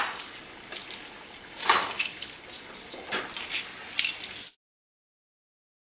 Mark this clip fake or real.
real